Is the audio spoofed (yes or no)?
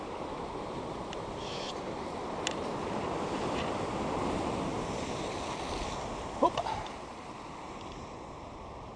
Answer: yes